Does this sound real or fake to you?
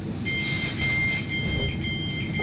fake